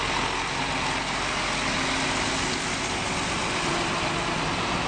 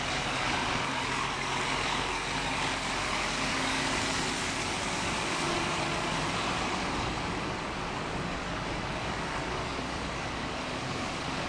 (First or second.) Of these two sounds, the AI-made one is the second